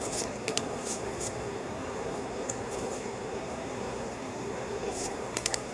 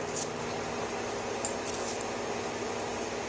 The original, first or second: second